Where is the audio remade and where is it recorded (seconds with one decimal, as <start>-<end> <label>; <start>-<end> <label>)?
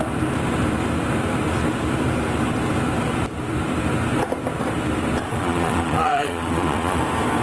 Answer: 0.0-5.3 recorded; 5.3-7.0 remade; 7.0-7.4 recorded